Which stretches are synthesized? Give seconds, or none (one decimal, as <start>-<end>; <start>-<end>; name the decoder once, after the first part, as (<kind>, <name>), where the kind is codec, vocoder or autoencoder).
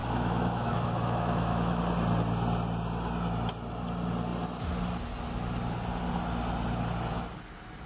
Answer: 0.0-1.8 (autoencoder, DAC-VAE)